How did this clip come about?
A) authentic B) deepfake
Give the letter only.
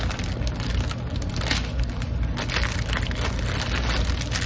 A